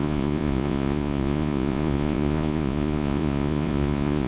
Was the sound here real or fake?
fake